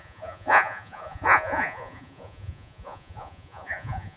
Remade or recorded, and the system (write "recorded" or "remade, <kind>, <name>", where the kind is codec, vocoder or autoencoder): remade, vocoder, Vocos